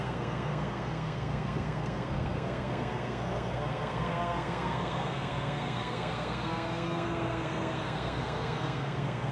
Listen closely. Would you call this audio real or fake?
fake